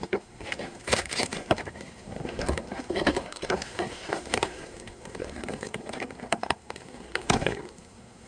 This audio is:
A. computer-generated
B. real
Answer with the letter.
A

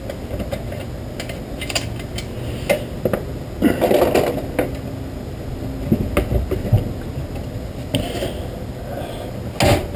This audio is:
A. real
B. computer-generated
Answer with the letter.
A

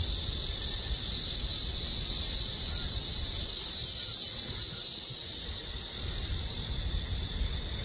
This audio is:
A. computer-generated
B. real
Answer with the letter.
B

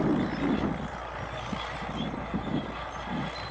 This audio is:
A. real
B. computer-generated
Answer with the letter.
A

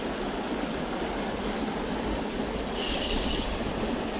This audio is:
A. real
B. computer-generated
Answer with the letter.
A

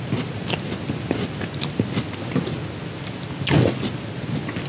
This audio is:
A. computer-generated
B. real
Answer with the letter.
B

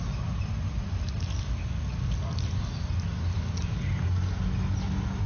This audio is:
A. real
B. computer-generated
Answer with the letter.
A